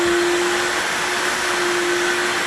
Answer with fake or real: real